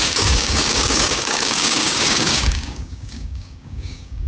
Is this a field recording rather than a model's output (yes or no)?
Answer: no